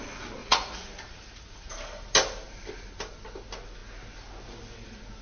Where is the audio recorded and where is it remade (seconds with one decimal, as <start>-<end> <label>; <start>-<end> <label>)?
0.0-0.4 recorded; 0.4-1.7 remade; 1.7-5.2 recorded

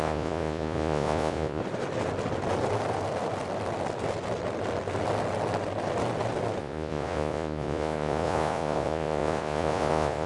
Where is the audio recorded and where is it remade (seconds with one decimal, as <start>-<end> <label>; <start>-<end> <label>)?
0.0-1.6 remade; 1.6-6.6 recorded; 6.6-10.3 remade